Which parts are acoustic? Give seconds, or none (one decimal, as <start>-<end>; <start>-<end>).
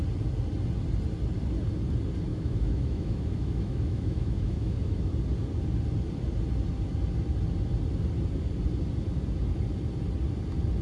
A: 0.0-2.3; 5.1-10.8